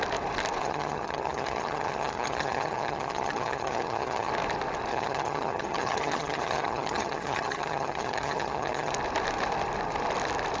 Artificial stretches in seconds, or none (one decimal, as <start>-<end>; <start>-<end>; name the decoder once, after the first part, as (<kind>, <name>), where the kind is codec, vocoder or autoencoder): 0.6-4.3 (vocoder, HiFi-GAN); 4.9-8.9